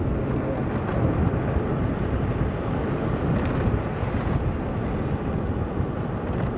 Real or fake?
real